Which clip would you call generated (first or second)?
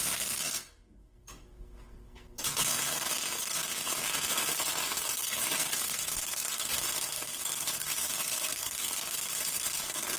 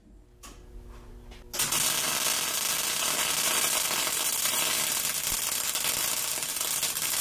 first